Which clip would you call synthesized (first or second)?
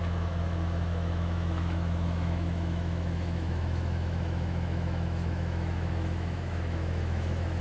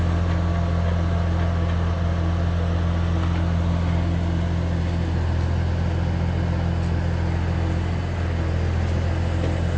first